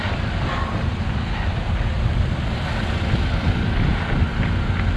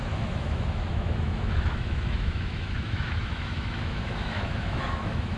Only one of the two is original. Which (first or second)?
first